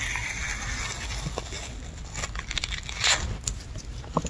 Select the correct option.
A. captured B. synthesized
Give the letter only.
A